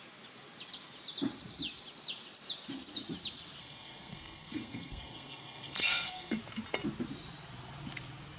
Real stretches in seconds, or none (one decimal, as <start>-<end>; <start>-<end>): 0.0-3.6; 6.4-8.4